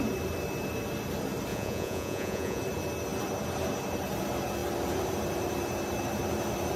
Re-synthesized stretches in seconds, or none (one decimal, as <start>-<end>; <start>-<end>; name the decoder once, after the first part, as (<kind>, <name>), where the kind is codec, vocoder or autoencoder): 1.5-2.6 (vocoder, Vocos)